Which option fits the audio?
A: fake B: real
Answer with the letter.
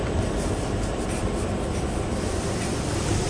A